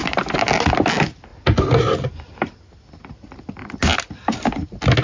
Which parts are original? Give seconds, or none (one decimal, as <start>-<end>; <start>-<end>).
0.0-5.0